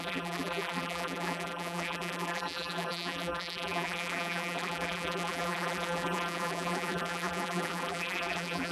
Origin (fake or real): fake